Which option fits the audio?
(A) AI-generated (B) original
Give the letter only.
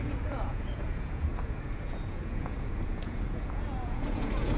A